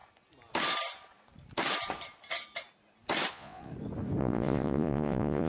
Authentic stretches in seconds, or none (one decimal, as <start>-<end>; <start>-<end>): 0.0-3.3; 3.7-4.2